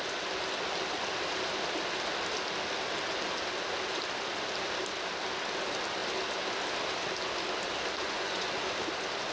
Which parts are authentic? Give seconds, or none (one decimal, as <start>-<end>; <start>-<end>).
0.0-8.0; 8.5-9.3